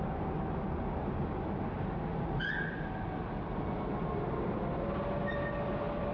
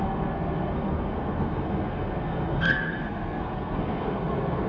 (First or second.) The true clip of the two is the first